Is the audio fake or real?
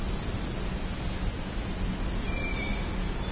real